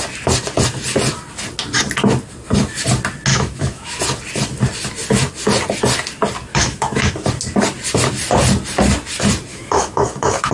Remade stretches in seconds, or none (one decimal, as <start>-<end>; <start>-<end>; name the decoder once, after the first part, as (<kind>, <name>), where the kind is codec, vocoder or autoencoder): 3.3-4.0 (autoencoder, DAC-VAE); 6.5-7.1; 9.5-10.5